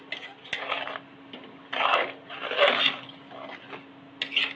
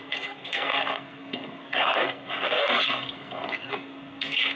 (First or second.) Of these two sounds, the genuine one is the first